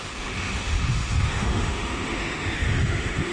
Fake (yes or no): yes